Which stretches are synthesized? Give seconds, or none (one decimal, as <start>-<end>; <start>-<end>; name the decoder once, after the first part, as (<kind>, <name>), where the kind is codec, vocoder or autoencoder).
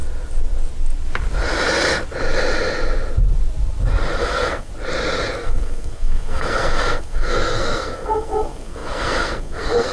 4.2-4.7 (codec, SNAC); 5.3-9.9